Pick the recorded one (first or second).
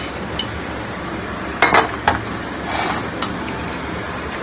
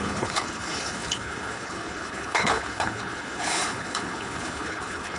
first